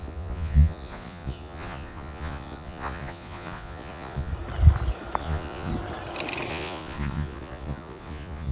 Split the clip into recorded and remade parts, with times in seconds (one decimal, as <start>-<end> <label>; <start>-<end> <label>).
0.0-4.3 remade; 4.3-5.2 recorded; 5.2-5.7 remade; 5.7-6.5 recorded; 6.5-8.5 remade